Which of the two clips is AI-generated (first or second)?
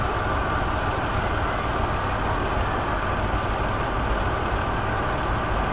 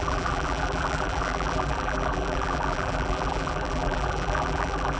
second